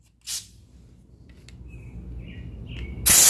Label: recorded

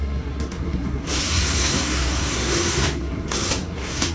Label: remade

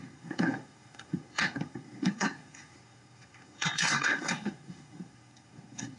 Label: remade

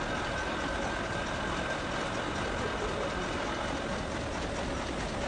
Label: recorded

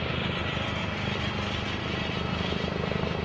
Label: recorded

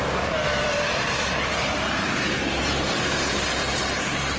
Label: remade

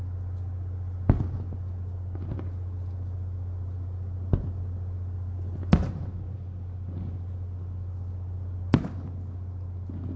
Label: recorded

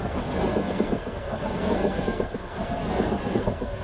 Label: remade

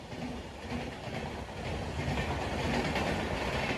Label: recorded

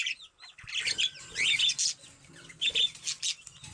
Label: recorded